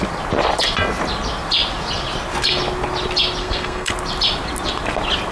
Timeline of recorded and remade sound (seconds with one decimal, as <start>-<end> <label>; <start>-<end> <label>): 0.0-3.4 recorded; 3.4-3.9 remade; 3.9-5.3 recorded